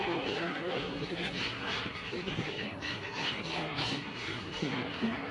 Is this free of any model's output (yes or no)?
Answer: no